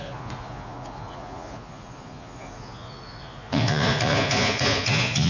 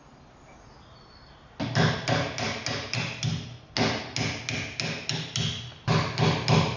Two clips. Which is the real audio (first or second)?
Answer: second